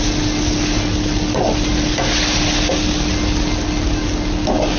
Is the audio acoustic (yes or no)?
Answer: yes